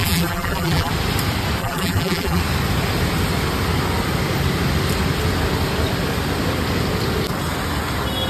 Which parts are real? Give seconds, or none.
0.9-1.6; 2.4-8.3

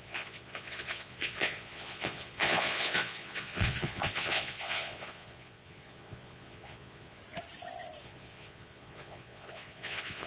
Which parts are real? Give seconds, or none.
7.2-8.0

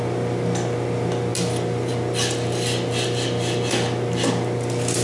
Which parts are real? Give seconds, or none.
0.0-5.0

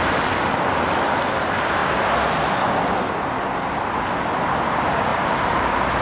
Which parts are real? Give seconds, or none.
0.6-5.1

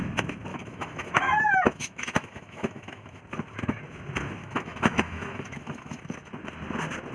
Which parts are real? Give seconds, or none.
0.0-0.5; 3.2-4.4; 6.0-7.1

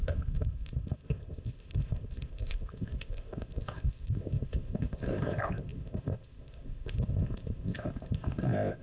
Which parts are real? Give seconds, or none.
none